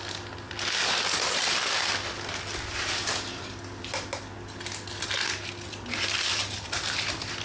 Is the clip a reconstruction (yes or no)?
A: no